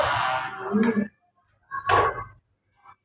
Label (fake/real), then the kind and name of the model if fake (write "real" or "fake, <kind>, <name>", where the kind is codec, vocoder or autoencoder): real